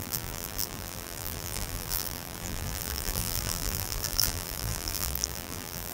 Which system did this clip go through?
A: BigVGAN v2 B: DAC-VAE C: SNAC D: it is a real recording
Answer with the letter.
A